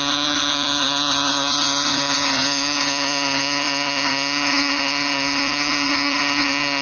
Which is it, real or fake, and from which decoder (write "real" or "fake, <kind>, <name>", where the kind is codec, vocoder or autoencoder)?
fake, vocoder, HiFi-GAN